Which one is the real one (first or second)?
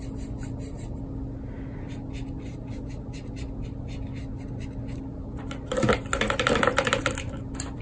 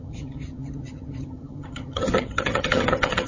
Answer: first